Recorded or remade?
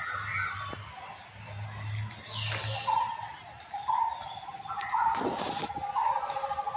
recorded